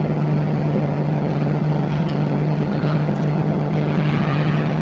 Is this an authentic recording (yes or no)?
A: no